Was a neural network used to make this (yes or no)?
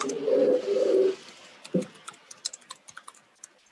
no